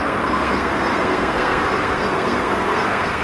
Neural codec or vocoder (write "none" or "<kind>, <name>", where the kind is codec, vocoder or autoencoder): codec, SNAC